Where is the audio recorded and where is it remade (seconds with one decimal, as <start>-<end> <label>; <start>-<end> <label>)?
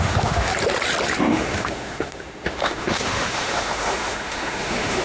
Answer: 0.0-0.5 remade; 0.5-1.2 recorded; 1.2-5.0 remade